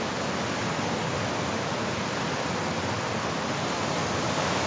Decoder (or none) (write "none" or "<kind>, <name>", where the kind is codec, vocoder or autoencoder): none